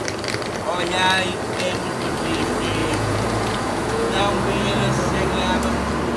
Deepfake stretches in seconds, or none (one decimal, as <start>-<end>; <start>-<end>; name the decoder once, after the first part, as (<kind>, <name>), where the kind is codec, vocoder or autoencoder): 2.8-4.2 (vocoder, Vocos)